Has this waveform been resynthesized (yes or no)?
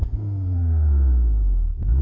yes